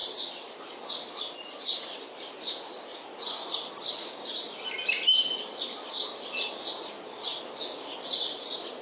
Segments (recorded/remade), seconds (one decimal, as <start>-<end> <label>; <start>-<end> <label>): 0.0-0.5 remade; 0.5-8.8 recorded